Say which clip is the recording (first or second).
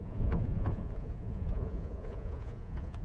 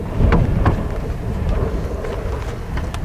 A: second